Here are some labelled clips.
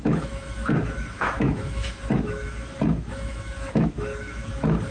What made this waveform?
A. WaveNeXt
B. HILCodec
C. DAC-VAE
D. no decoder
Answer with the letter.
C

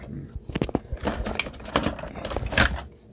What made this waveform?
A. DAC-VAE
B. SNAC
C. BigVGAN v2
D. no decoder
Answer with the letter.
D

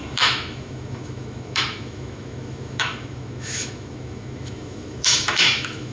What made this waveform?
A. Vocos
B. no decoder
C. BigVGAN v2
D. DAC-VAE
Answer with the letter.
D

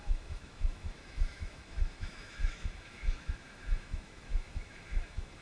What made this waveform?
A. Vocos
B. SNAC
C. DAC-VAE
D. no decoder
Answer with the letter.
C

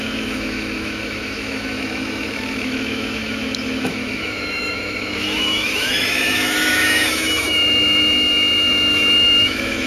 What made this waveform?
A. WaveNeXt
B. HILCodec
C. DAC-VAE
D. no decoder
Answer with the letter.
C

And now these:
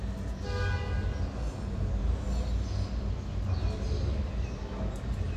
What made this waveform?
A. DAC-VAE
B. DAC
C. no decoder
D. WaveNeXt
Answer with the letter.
C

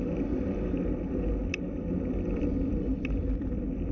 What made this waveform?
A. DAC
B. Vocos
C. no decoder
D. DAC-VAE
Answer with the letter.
C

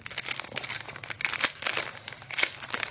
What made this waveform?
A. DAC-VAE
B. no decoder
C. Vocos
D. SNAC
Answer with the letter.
B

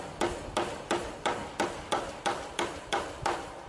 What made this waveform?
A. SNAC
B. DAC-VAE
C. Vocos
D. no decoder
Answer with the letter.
D